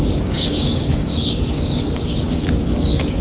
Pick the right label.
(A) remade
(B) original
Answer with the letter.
A